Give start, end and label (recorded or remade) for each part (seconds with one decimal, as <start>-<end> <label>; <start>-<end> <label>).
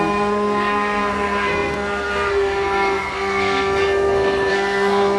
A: 0.0-5.2 remade